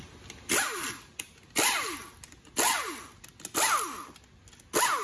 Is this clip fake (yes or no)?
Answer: no